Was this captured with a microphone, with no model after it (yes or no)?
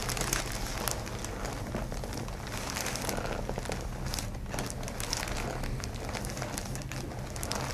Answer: yes